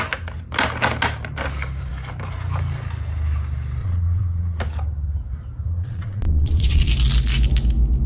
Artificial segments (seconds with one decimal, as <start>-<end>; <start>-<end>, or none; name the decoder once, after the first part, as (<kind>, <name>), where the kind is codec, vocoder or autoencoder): 3.8-4.6 (vocoder, Vocos); 5.7-6.9